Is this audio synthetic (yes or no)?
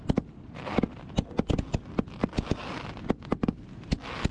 no